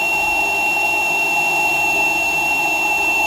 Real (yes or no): yes